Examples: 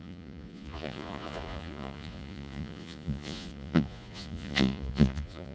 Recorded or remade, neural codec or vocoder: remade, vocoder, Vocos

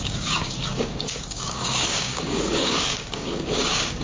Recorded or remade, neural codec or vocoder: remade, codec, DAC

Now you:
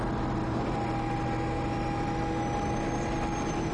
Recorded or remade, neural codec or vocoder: recorded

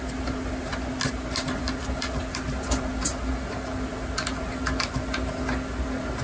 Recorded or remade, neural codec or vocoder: recorded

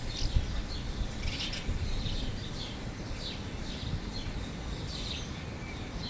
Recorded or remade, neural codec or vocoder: remade, vocoder, BigVGAN v2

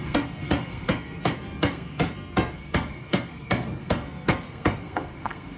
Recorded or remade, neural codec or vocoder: remade, codec, SNAC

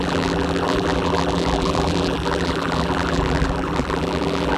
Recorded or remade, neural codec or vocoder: remade, vocoder, BigVGAN v2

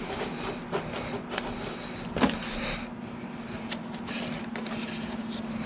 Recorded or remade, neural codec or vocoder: recorded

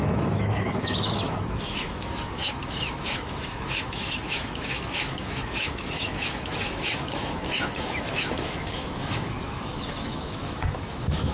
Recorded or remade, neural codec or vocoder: remade, autoencoder, DAC-VAE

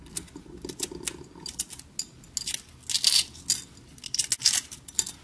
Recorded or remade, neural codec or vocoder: recorded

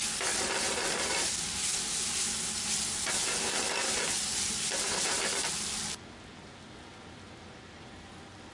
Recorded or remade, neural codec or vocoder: recorded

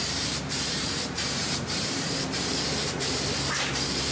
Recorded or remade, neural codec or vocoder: remade, vocoder, BigVGAN v2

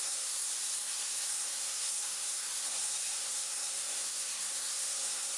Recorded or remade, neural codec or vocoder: remade, codec, SNAC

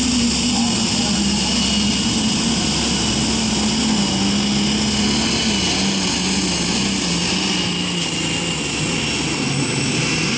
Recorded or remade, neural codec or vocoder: recorded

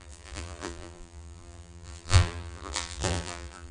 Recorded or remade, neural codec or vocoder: remade, vocoder, BigVGAN v2